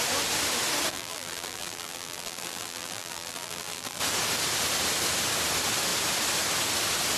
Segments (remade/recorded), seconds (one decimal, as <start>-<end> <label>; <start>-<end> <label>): 0.0-0.9 recorded; 0.9-4.0 remade; 4.0-7.2 recorded